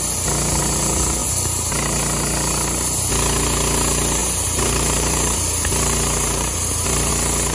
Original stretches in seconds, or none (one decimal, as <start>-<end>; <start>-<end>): 0.0-4.2; 7.1-7.5